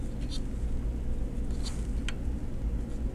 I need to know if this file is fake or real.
real